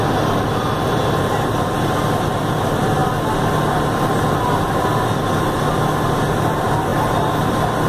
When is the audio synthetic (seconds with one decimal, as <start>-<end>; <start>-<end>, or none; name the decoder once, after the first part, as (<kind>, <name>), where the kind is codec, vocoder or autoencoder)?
none